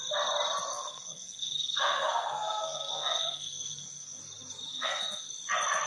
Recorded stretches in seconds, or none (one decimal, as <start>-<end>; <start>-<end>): 0.0-0.7; 4.2-4.7; 5.3-5.9